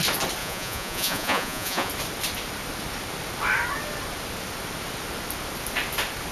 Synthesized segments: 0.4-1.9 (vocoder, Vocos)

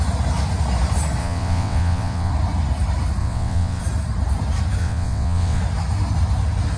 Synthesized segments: 1.2-2.3 (vocoder, WaveNeXt); 3.2-3.8; 4.8-5.6

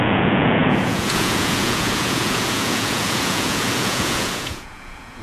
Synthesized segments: 0.0-5.2 (vocoder, Vocos)

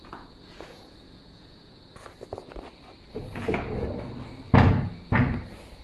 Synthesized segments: 0.0-1.9 (vocoder, Vocos)

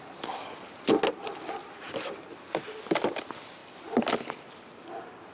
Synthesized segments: none